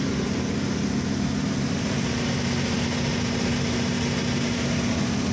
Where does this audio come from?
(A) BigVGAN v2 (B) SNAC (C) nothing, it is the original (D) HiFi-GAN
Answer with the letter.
C